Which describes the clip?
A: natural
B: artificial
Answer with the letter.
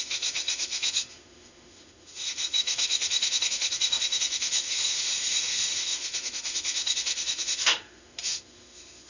B